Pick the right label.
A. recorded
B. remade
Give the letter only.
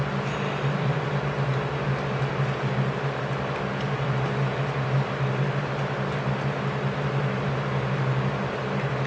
A